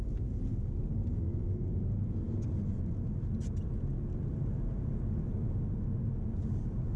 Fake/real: real